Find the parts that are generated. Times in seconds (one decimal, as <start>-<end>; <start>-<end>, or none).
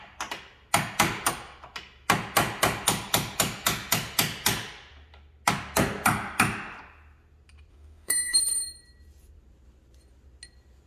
7.7-8.4